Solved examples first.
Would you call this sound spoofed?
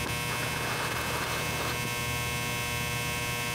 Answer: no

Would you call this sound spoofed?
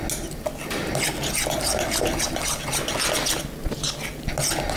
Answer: no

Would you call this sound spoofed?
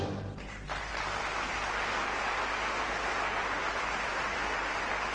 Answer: no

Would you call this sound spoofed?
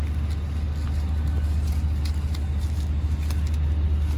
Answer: no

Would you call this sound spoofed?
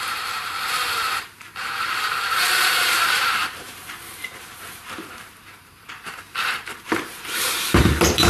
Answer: yes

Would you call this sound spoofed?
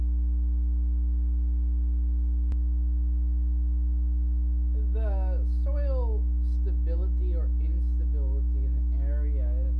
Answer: no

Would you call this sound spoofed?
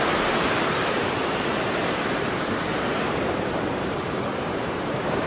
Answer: yes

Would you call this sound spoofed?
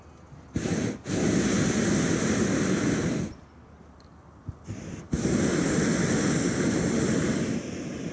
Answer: no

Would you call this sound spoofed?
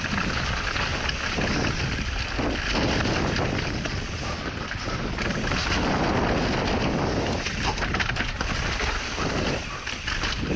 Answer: no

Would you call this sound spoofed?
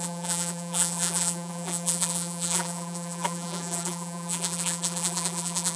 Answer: yes